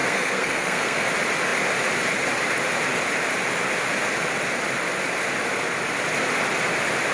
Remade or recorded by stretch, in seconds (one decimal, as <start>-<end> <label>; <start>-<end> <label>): 0.0-1.1 remade; 1.1-7.1 recorded